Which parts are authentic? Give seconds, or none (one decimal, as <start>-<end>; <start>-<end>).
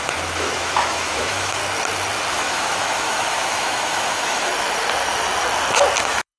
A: 1.6-2.3; 4.5-6.0